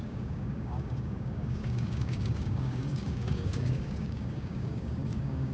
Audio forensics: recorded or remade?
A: remade